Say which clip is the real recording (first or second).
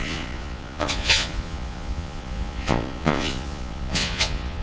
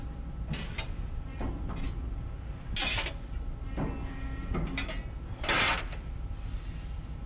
second